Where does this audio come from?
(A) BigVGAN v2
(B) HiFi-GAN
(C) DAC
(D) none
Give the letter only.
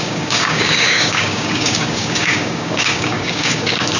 C